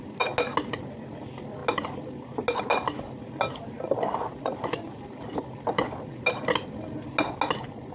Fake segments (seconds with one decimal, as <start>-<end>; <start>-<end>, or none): none